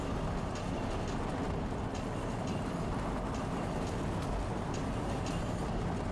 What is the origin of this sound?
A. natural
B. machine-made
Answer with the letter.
A